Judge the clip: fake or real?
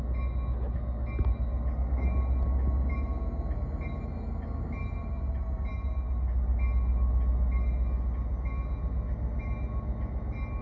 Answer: real